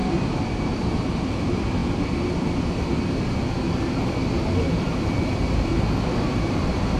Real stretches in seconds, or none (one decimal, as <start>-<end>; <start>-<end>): 1.8-4.6